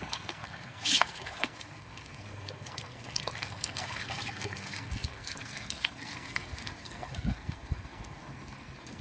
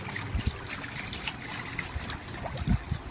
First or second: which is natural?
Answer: second